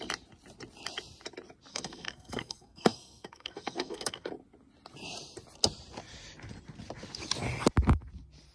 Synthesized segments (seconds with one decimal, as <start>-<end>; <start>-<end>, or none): 1.7-4.3